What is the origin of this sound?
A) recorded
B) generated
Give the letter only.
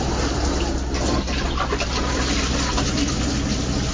A